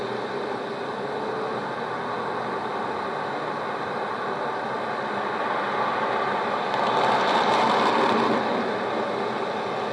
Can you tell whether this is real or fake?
real